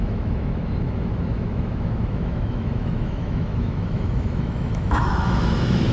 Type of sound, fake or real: fake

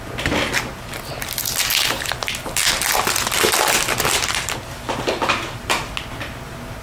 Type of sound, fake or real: real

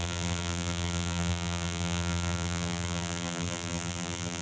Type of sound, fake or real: fake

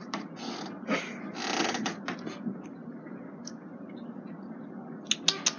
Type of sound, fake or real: real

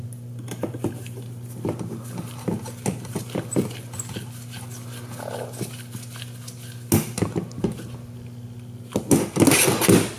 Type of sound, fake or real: real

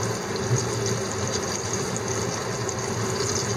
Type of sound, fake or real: real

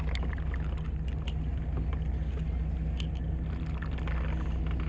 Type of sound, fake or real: real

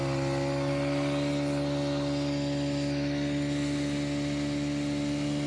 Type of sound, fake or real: real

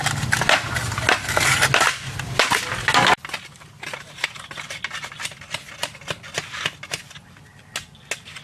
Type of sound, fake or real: real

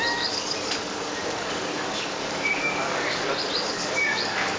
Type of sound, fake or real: fake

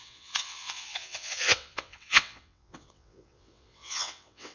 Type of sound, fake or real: fake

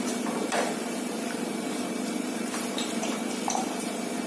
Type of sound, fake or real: fake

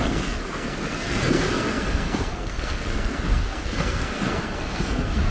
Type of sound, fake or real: fake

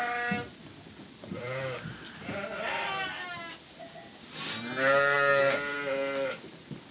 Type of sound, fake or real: real